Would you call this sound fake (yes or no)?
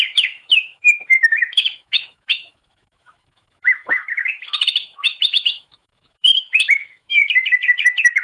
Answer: yes